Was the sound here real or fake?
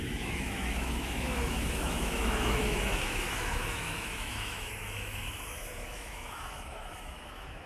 fake